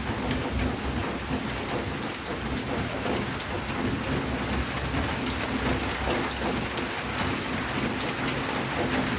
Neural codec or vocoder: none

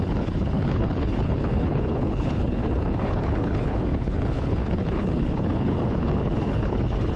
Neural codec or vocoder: codec, HILCodec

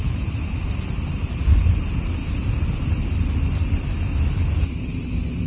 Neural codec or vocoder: vocoder, BigVGAN v2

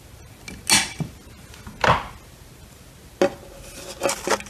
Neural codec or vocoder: none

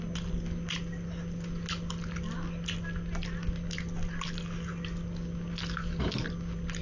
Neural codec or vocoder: none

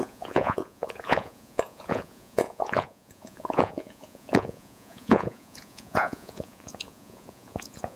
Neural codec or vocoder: vocoder, Vocos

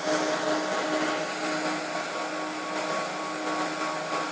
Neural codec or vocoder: none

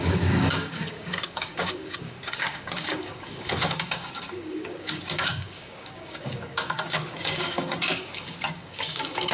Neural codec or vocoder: codec, DAC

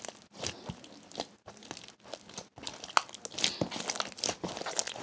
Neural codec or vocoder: none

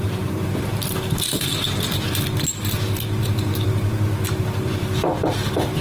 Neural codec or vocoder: vocoder, BigVGAN v2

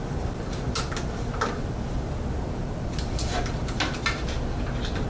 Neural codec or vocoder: none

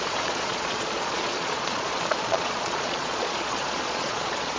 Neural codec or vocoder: vocoder, Vocos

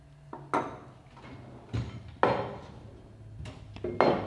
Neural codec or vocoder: none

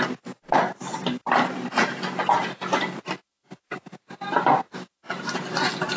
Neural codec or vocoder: none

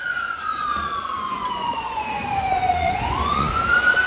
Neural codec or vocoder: vocoder, Vocos